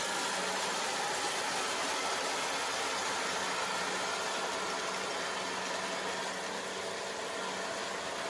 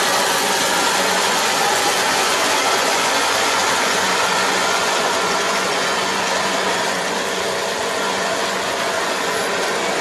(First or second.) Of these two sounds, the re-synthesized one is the second